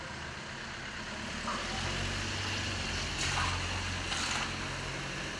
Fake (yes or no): no